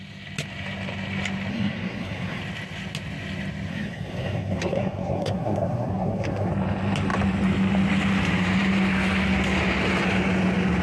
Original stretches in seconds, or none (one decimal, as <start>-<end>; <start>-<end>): 0.0-1.5; 2.4-3.7; 6.5-10.8